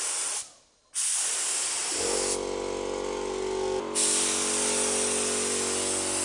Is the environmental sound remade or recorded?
recorded